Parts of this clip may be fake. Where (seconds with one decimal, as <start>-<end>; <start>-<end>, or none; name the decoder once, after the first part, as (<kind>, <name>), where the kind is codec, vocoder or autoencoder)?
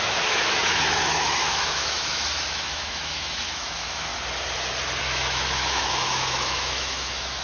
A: 0.0-4.1 (autoencoder, DAC-VAE); 5.0-7.4